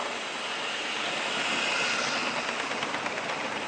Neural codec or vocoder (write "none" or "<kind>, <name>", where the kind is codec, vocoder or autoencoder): none